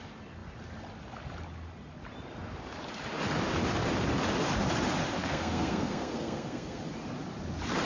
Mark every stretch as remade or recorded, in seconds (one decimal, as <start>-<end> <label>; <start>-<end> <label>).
0.0-5.2 recorded; 5.2-6.8 remade; 6.8-7.9 recorded